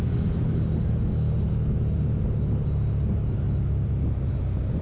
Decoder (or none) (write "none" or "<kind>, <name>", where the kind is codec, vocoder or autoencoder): none